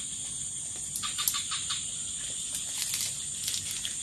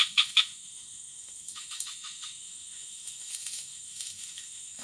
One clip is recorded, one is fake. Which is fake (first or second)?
second